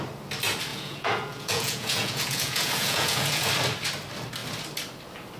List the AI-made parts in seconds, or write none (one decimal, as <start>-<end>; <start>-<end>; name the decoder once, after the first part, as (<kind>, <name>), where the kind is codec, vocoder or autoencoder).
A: 0.7-3.5 (vocoder, Vocos)